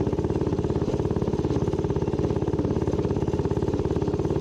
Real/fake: real